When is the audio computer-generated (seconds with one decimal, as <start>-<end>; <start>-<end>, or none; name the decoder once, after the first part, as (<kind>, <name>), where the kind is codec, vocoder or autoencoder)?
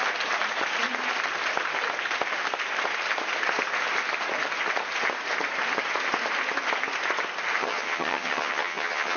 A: 7.6-9.2 (vocoder, HiFi-GAN)